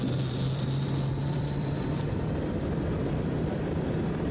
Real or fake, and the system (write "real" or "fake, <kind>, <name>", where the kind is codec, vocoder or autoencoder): fake, vocoder, BigVGAN v2